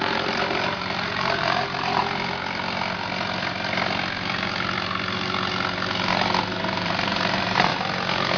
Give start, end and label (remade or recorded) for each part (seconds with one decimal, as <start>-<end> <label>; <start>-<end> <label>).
0.0-2.0 remade; 2.0-6.6 recorded; 6.6-7.7 remade; 7.7-8.4 recorded